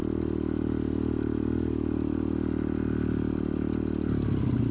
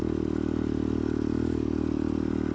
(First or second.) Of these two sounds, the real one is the first